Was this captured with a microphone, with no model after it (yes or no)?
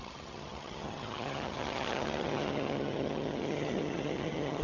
no